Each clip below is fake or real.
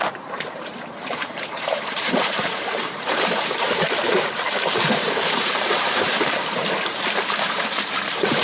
fake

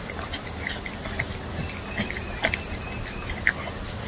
real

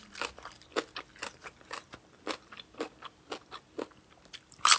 fake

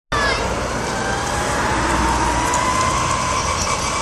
real